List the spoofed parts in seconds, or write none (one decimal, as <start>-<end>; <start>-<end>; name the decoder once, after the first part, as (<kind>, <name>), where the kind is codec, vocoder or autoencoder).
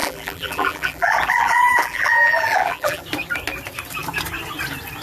0.0-3.0 (vocoder, BigVGAN v2)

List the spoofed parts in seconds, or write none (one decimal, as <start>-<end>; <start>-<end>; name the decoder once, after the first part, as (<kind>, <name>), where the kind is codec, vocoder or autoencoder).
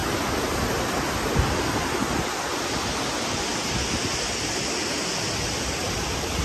none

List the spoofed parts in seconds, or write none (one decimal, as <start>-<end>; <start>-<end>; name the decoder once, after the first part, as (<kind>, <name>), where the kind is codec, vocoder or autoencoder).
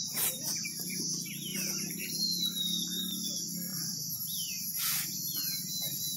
3.7-4.5 (vocoder, BigVGAN v2)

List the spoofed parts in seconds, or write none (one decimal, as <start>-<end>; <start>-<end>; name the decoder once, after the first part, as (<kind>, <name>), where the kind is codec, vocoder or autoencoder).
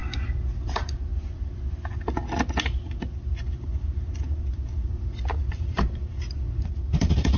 0.7-1.1 (vocoder, BigVGAN v2); 5.5-6.1; 6.6-7.4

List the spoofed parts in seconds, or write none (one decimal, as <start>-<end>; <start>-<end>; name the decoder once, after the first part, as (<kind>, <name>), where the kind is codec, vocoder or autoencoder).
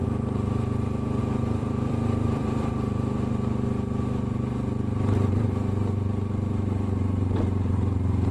1.6-2.7 (vocoder, BigVGAN v2)